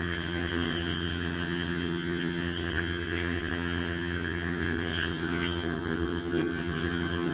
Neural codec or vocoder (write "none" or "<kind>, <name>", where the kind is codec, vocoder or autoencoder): vocoder, HiFi-GAN